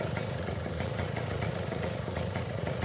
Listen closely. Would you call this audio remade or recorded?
remade